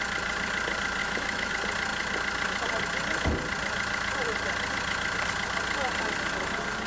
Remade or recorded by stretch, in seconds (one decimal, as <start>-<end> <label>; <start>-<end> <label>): 0.0-1.0 recorded; 1.0-1.5 remade; 1.5-6.9 recorded